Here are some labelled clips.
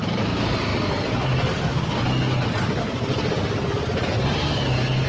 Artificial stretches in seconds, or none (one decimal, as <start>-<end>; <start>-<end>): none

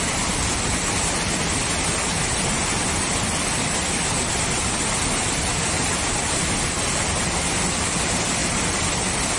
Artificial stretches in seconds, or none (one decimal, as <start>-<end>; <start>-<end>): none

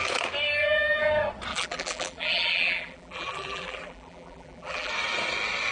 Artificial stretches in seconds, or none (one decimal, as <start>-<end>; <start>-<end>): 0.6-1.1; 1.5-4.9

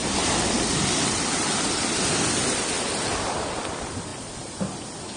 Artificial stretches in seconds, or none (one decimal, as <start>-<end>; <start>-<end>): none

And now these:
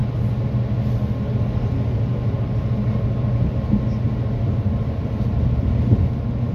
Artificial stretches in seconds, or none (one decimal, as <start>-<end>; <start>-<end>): none

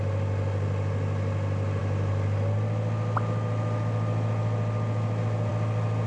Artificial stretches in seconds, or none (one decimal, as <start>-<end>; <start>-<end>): none

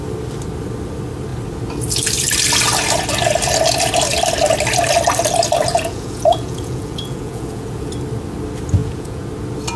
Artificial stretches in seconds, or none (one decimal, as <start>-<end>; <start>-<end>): 5.7-7.9; 8.8-9.3

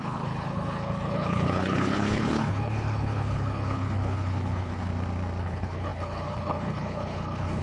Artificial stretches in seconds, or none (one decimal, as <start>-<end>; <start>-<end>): 0.0-4.9; 5.4-7.6